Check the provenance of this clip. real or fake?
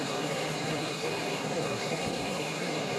fake